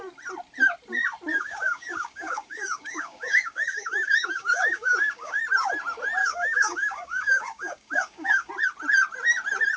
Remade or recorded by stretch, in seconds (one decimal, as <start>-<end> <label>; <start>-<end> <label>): 0.0-1.3 recorded; 1.3-5.4 remade; 5.4-6.2 recorded; 6.2-8.5 remade; 8.5-9.8 recorded